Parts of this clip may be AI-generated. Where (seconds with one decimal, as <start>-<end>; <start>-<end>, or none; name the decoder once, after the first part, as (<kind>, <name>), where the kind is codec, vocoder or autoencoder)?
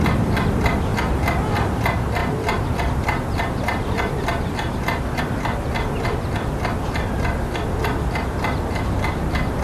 none